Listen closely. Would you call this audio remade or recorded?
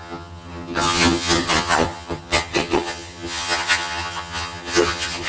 remade